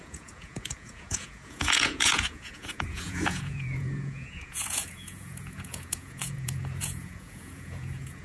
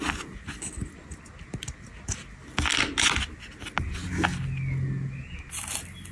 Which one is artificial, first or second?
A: first